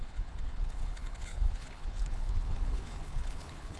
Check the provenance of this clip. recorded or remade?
remade